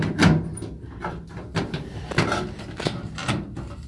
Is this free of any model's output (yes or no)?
yes